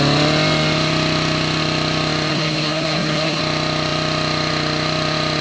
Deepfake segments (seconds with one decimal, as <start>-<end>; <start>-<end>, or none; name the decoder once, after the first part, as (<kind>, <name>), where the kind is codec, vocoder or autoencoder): 2.3-3.4 (codec, SNAC)